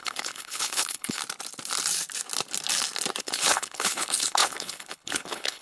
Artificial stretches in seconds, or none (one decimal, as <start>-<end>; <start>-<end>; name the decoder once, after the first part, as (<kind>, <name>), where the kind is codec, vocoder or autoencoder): 0.0-1.2 (codec, HILCodec); 3.2-5.6